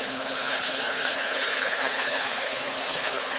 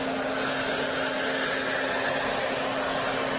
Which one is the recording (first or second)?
second